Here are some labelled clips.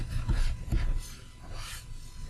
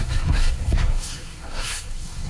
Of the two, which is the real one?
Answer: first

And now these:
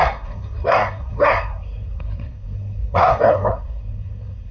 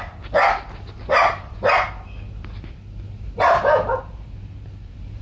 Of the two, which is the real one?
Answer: second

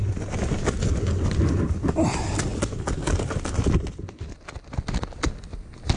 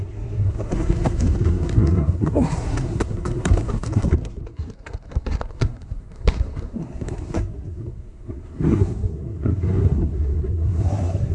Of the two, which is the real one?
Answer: first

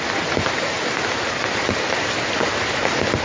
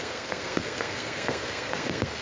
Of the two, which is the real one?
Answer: first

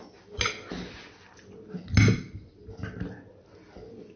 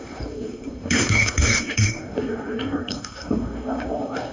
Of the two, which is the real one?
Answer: first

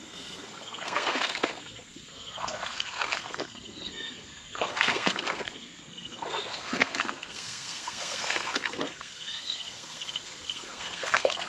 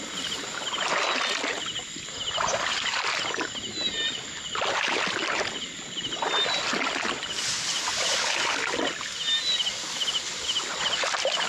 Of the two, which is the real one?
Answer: second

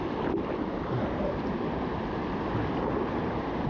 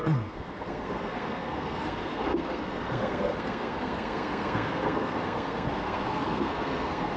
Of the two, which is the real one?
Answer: first